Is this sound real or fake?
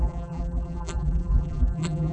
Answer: fake